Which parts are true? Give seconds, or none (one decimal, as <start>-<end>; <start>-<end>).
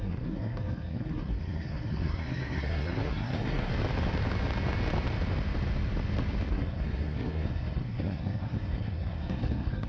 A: 3.7-6.5